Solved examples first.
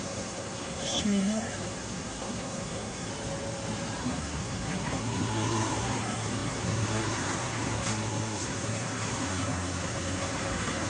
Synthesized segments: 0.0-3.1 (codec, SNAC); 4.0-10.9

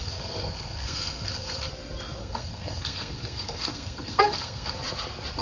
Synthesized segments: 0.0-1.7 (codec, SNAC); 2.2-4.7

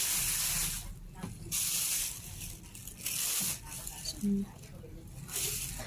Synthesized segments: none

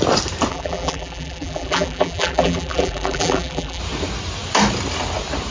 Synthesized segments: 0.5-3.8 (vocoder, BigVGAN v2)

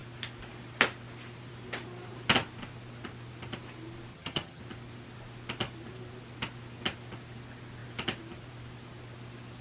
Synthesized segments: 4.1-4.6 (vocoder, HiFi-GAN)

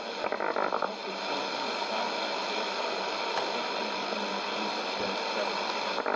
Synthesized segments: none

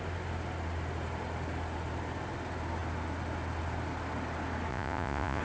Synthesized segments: 4.7-5.4 (vocoder, Vocos)